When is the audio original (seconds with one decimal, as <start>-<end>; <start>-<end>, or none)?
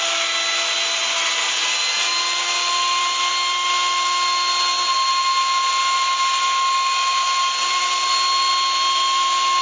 0.0-9.6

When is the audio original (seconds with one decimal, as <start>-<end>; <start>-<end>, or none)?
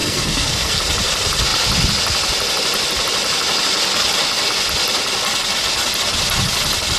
0.8-7.0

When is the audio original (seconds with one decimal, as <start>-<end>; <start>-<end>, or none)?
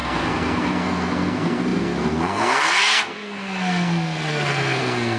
none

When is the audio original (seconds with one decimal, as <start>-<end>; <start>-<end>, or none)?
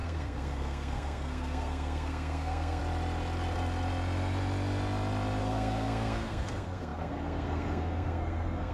2.8-5.4